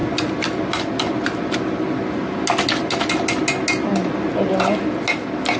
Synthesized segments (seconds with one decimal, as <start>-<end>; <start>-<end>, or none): none